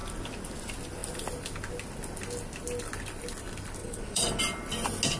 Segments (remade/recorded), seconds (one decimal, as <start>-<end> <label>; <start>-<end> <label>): 0.0-3.8 recorded; 3.8-4.4 remade; 4.4-5.2 recorded